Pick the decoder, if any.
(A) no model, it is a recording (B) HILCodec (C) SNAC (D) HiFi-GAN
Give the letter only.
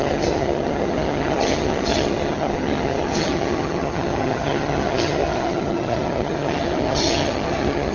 D